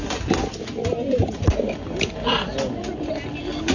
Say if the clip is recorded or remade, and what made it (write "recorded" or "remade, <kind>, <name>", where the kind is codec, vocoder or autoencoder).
recorded